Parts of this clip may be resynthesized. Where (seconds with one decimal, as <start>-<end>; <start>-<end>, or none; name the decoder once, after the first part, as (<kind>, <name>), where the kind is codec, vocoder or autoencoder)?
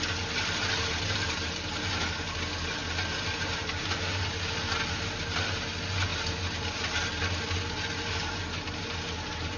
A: none